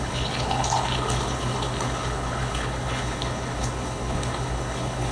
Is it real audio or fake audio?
fake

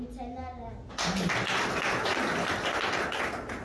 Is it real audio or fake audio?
real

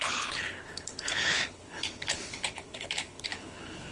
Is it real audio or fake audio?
fake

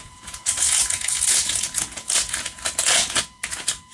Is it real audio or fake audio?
fake